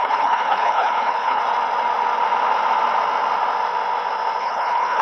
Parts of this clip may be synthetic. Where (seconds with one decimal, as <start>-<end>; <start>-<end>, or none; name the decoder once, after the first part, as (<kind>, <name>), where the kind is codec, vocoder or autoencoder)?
0.0-1.4 (codec, HILCodec); 4.4-5.0